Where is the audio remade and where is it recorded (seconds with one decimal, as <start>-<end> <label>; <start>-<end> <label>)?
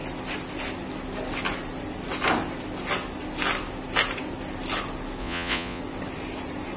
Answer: 0.0-5.2 recorded; 5.2-5.8 remade; 5.8-6.8 recorded